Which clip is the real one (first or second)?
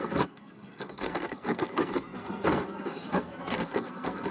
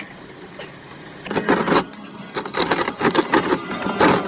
second